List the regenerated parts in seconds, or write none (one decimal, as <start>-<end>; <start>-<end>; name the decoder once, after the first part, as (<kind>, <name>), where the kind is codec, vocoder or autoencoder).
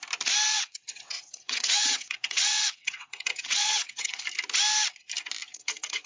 0.5-4.2 (vocoder, WaveNeXt); 5.5-6.1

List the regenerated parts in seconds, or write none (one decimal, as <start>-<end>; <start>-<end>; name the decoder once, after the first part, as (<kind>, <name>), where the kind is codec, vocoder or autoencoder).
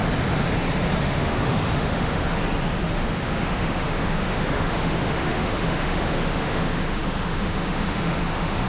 1.0-2.2 (autoencoder, DAC-VAE); 2.8-8.7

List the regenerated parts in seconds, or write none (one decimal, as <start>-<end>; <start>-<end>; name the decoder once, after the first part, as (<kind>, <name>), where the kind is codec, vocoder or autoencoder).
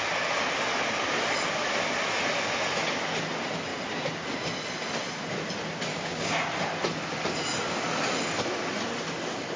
5.9-6.4 (codec, DAC)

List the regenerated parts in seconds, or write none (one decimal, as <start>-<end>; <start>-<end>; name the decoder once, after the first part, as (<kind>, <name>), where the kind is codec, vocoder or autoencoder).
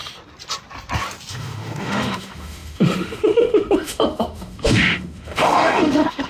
1.3-6.3 (autoencoder, DAC-VAE)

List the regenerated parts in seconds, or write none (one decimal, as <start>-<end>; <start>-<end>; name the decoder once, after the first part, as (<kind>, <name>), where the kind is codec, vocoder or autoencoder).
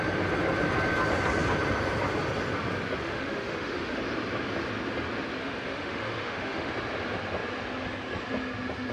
3.0-4.0 (autoencoder, DAC-VAE); 5.4-6.7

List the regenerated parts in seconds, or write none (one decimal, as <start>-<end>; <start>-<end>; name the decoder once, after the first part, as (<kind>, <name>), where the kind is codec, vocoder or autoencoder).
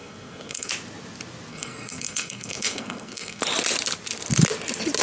0.0-0.7 (codec, SNAC); 1.5-3.4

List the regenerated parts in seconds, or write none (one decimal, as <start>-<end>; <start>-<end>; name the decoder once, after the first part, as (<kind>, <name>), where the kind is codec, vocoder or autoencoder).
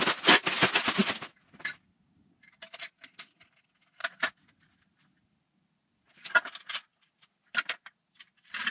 none